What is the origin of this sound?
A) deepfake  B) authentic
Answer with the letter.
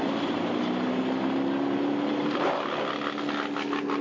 B